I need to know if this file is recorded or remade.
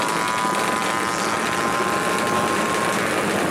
recorded